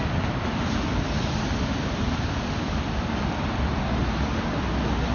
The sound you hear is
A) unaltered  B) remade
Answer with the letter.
A